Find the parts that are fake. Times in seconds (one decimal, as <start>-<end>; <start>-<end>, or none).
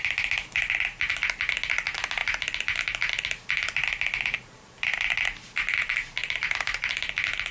4.1-4.9; 6.2-6.9